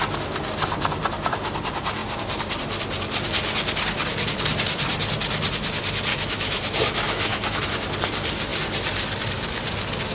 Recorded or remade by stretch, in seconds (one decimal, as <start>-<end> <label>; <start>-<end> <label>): 0.0-6.1 recorded; 6.1-7.6 remade; 7.6-10.1 recorded